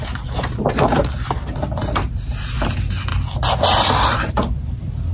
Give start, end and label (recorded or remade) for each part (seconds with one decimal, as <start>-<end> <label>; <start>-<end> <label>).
0.0-5.1 recorded

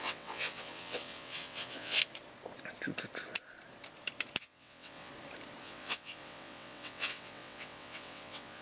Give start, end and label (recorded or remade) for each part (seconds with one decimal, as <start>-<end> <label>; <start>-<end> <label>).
0.0-2.0 remade; 2.0-4.4 recorded; 4.4-5.1 remade; 5.1-5.6 recorded; 5.6-8.6 remade

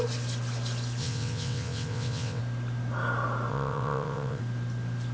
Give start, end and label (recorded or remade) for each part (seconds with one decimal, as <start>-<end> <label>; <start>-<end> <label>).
0.0-1.0 recorded; 1.0-2.4 remade; 2.4-3.5 recorded; 3.5-4.4 remade; 4.4-5.1 recorded

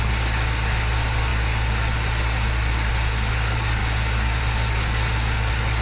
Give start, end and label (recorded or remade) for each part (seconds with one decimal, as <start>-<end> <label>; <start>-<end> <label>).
0.0-5.8 recorded

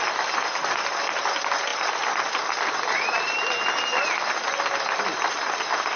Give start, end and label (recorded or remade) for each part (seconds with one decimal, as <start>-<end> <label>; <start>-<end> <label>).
0.0-6.0 recorded

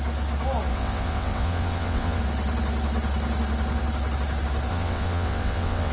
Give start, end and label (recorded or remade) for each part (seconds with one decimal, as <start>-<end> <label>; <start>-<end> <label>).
0.0-0.7 recorded; 0.7-2.2 remade; 2.2-4.7 recorded; 4.7-5.9 remade

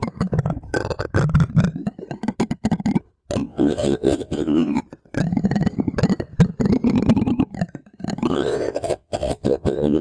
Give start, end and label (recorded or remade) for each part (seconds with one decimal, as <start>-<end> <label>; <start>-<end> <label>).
0.0-3.4 recorded; 3.4-4.8 remade; 4.8-8.3 recorded; 8.3-10.0 remade